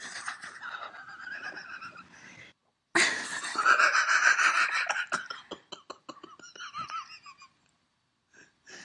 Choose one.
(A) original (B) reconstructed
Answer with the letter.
A